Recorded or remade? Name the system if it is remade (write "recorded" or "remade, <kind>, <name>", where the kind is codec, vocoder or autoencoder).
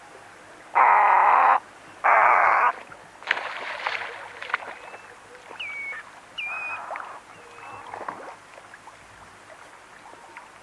recorded